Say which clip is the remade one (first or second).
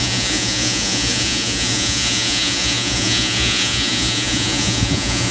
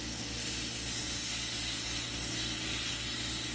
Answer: first